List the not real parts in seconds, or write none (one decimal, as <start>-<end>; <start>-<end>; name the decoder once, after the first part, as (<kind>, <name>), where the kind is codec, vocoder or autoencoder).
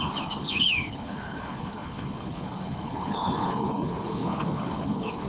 0.0-5.3 (codec, HILCodec)